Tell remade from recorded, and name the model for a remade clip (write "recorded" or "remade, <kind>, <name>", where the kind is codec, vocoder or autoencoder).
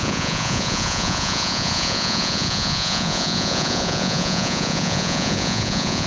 remade, vocoder, Vocos